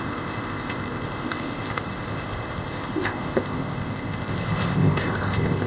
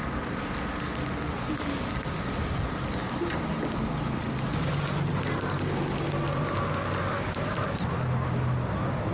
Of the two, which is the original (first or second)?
second